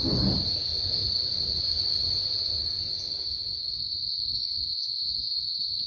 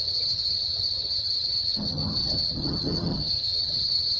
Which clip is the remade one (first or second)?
second